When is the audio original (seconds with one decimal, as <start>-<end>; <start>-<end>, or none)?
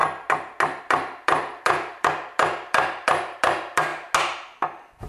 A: 0.0-0.8; 3.9-5.1